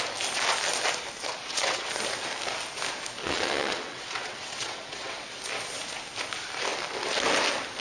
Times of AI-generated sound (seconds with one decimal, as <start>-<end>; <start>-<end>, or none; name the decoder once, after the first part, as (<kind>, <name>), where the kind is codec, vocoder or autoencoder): 1.3-1.9 (vocoder, WaveNeXt); 3.2-5.4